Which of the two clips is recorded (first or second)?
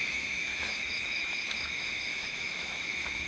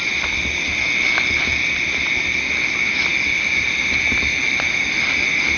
second